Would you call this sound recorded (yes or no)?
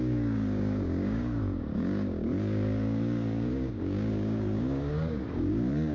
no